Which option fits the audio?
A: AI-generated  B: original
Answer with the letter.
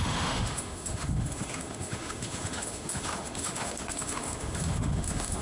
A